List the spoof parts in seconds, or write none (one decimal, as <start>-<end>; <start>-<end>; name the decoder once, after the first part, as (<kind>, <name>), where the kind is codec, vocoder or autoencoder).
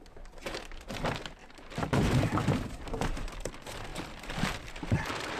1.4-3.3 (vocoder, BigVGAN v2); 3.9-5.4